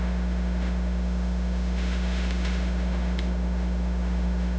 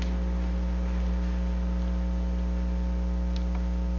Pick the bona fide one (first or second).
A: second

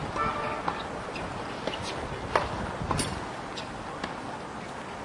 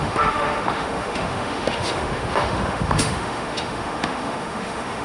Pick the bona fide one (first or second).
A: first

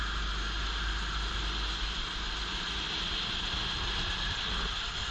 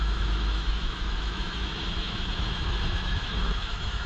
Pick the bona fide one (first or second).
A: first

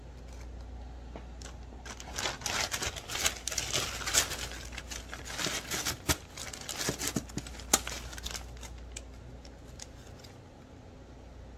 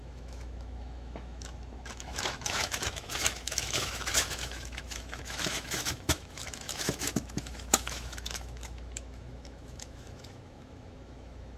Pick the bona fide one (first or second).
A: first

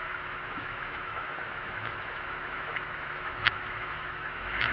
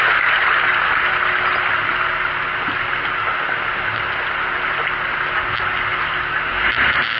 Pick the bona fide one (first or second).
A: second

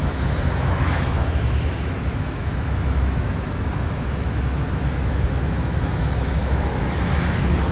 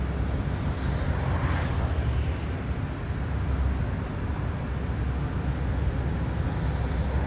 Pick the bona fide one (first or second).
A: second